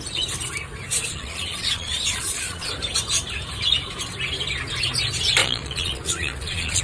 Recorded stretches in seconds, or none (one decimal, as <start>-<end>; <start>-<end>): 0.0-0.9; 2.7-5.4